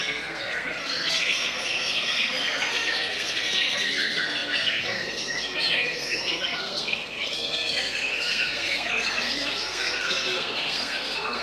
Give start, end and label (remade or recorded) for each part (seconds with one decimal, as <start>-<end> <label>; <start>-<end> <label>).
0.0-11.4 remade

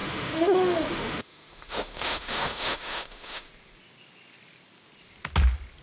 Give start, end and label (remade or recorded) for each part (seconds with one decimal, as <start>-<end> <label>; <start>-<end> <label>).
0.0-3.5 remade; 3.5-5.8 recorded

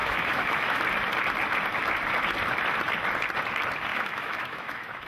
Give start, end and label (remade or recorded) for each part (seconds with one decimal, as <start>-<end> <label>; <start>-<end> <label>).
0.0-0.8 remade; 0.8-3.9 recorded; 3.9-5.1 remade

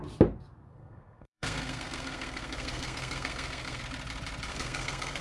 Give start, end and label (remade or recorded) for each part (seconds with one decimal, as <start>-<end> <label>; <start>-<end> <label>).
0.0-0.7 recorded; 0.7-3.8 remade; 3.8-4.5 recorded; 4.5-5.2 remade

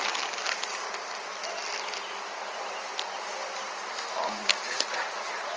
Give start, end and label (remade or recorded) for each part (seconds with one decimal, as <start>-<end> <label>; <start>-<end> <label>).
0.0-5.6 recorded

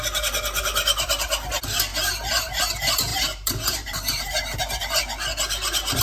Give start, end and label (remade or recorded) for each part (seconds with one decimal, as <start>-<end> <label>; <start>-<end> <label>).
0.0-1.9 recorded; 1.9-2.6 remade; 2.6-3.1 recorded; 3.1-4.6 remade; 4.6-6.0 recorded